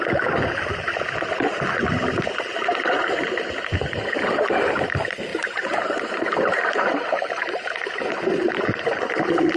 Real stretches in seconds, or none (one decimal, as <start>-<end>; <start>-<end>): 0.0-5.3; 9.2-9.6